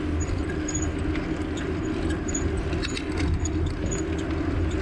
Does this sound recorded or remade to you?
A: recorded